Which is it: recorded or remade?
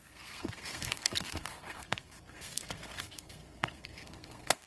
remade